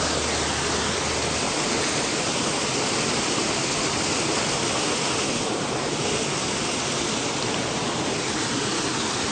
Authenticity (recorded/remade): recorded